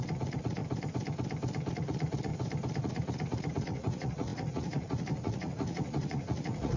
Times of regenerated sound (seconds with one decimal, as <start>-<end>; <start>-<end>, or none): 0.0-0.6; 1.7-2.3; 2.8-6.8